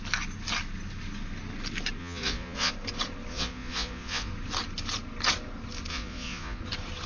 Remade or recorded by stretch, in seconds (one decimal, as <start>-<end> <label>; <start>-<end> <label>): 0.0-2.0 recorded; 2.0-2.7 remade; 2.7-3.3 recorded; 3.3-4.3 remade; 4.3-5.9 recorded; 5.9-6.6 remade; 6.6-7.1 recorded